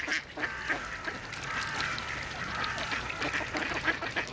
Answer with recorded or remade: recorded